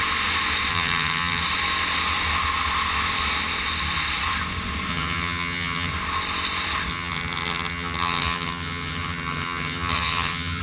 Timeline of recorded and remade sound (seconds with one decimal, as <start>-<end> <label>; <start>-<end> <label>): 0.0-0.7 recorded; 0.7-1.4 remade; 1.4-4.9 recorded; 4.9-5.9 remade; 5.9-6.9 recorded; 6.9-10.6 remade